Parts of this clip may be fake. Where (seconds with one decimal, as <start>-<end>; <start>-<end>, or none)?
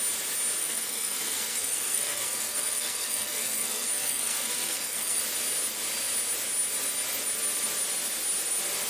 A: 0.6-5.2